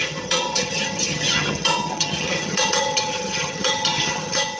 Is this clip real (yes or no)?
no